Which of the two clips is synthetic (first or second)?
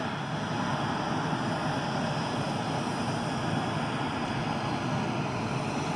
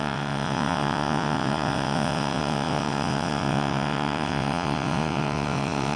second